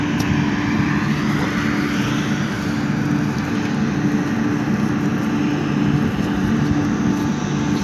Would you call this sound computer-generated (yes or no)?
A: no